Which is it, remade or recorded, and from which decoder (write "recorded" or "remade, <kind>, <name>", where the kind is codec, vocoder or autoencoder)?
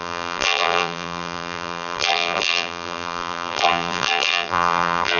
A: remade, vocoder, BigVGAN v2